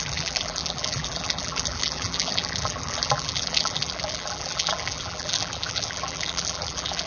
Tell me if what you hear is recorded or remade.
remade